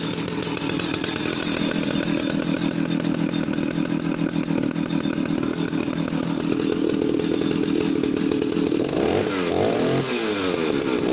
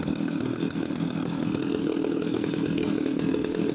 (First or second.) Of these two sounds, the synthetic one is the second